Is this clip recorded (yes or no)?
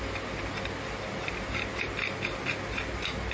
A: yes